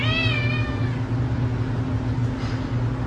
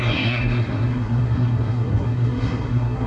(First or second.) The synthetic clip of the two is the second